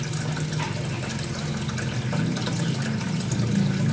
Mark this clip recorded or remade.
recorded